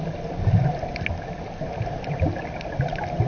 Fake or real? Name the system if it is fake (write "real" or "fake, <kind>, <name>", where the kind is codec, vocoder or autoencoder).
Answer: real